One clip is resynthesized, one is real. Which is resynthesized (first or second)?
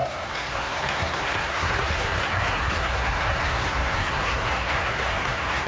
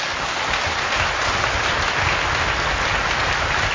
first